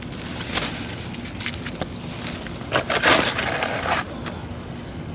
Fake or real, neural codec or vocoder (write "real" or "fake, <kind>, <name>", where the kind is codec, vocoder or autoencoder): real